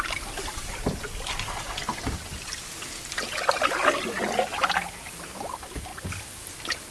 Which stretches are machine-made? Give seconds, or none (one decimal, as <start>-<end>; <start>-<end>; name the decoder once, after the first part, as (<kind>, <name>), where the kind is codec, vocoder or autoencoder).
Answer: none